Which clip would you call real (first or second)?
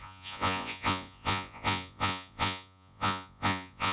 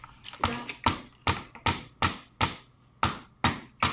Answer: second